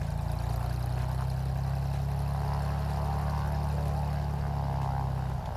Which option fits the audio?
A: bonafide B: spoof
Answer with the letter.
A